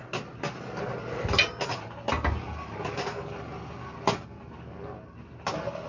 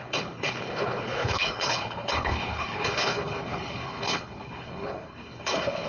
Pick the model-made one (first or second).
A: second